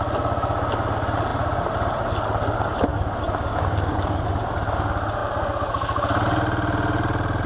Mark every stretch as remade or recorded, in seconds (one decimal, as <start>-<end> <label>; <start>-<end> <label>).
0.0-2.9 recorded; 2.9-4.2 remade; 4.2-7.5 recorded